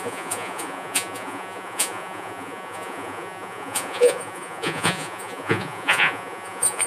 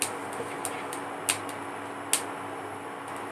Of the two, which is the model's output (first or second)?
first